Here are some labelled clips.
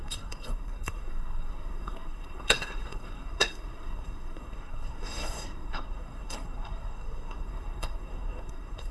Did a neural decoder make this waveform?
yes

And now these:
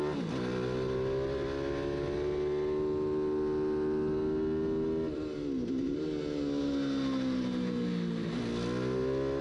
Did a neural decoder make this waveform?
no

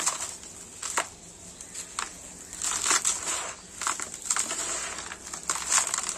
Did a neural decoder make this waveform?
no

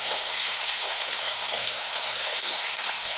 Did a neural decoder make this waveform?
yes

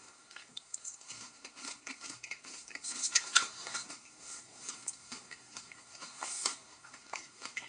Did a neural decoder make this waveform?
yes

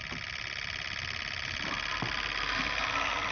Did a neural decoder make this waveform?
no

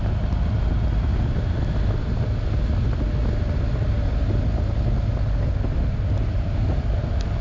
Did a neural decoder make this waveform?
no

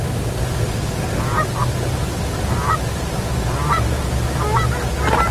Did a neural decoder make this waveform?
no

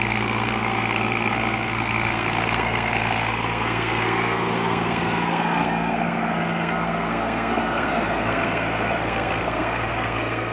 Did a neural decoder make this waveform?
yes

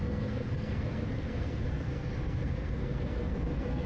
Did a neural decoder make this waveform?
yes